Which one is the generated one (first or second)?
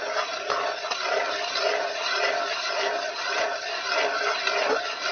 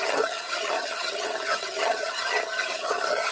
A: second